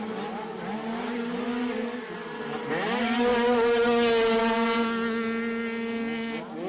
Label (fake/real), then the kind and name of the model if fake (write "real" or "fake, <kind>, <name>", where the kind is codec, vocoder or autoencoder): real